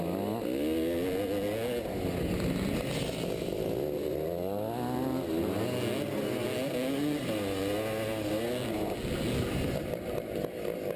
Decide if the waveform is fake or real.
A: real